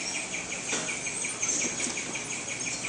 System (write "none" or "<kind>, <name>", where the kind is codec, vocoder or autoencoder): none